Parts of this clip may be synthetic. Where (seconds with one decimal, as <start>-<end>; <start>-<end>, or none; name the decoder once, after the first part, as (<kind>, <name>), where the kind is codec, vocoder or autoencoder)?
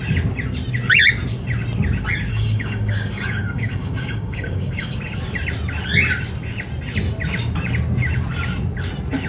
2.3-5.0 (codec, DAC)